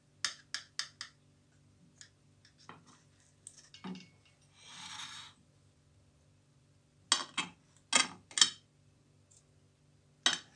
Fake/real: real